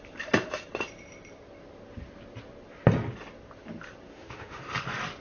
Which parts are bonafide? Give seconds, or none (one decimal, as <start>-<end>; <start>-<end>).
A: 0.0-4.1; 4.6-5.2